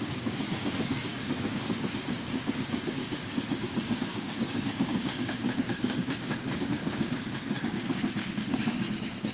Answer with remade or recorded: remade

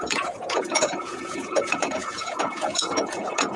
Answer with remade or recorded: remade